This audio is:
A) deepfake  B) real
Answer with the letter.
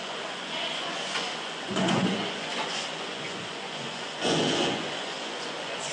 A